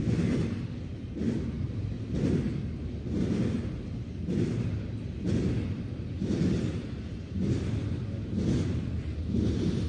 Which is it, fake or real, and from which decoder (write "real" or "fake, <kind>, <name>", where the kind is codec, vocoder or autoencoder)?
real